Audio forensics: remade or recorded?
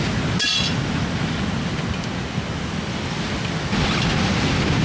recorded